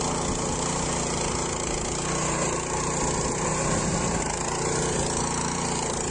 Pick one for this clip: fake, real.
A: real